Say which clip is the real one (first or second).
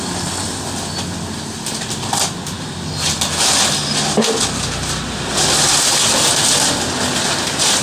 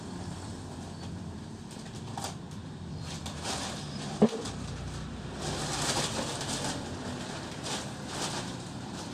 first